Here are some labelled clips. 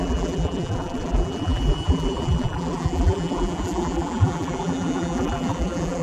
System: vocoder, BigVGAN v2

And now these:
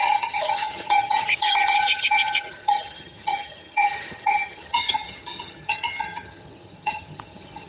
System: vocoder, HiFi-GAN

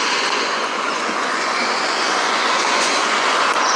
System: vocoder, Vocos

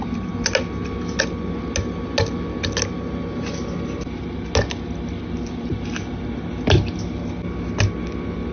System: none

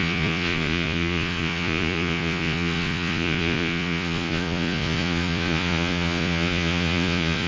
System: vocoder, Vocos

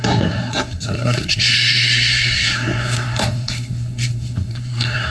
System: codec, SNAC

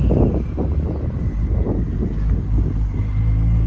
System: none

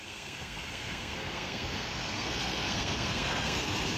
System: codec, SNAC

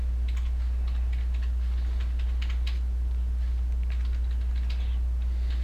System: none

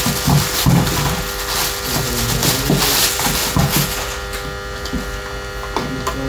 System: none